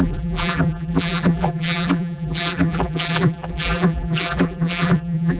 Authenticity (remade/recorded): remade